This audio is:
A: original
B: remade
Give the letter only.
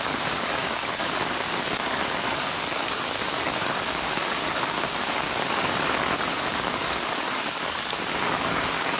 B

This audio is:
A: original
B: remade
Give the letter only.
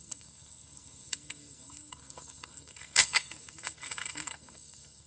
B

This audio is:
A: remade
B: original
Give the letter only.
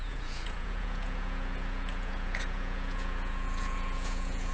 A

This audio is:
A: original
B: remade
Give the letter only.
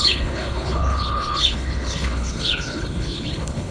B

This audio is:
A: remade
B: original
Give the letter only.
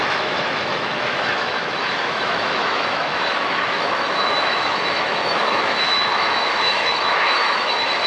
A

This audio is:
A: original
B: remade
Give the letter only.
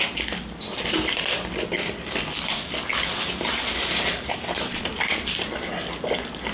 A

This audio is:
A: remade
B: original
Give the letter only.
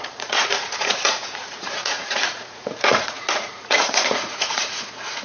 A